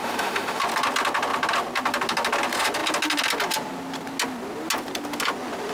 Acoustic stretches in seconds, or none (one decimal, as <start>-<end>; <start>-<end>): 0.6-5.7